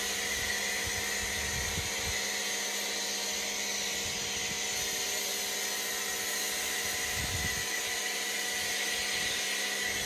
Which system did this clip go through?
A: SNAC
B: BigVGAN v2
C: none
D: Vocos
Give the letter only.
C